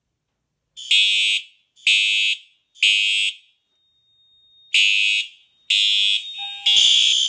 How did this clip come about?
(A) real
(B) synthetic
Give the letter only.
A